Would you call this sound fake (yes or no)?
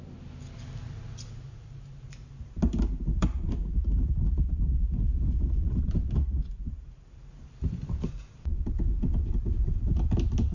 no